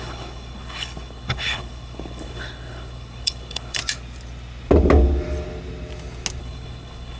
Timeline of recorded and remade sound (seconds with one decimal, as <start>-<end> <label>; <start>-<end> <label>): 0.0-3.8 remade; 3.8-6.4 recorded; 6.4-7.2 remade